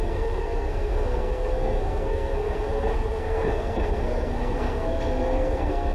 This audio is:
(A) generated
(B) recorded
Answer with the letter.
A